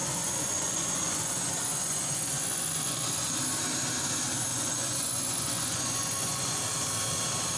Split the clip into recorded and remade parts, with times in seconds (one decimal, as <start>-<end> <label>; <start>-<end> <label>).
0.0-3.4 remade; 3.4-4.5 recorded; 4.5-6.6 remade; 6.6-7.6 recorded